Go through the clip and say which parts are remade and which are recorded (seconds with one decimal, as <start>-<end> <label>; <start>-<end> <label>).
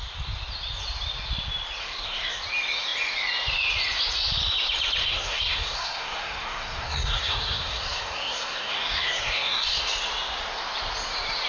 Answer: 0.0-1.8 recorded; 1.8-2.4 remade; 2.4-5.0 recorded; 5.0-9.8 remade; 9.8-11.5 recorded